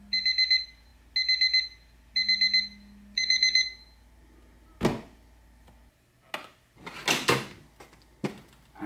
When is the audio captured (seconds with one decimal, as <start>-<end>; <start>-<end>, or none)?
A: 0.0-8.9